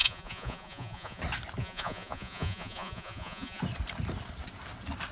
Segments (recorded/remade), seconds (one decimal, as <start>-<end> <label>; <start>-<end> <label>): 0.0-1.2 remade; 1.2-1.6 recorded; 1.6-3.6 remade; 3.6-5.1 recorded